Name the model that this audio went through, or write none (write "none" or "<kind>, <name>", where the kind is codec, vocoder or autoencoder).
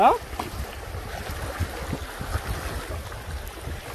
none